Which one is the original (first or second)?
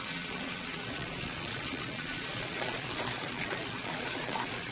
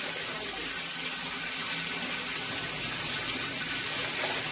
second